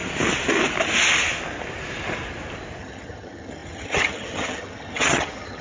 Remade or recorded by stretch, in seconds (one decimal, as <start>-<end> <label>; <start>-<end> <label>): 0.0-2.8 recorded; 2.8-5.6 remade